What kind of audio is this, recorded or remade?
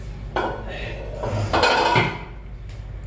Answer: recorded